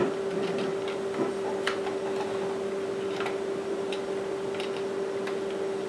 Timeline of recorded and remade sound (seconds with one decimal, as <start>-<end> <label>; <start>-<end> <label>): 0.0-5.9 recorded